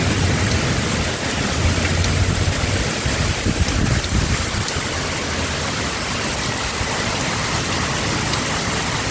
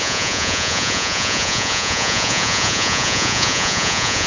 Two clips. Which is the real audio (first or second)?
first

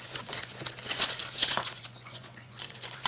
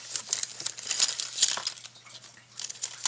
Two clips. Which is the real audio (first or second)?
second